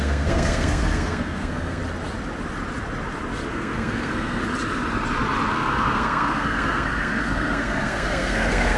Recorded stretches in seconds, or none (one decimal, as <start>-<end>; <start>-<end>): 1.8-3.5; 4.4-5.5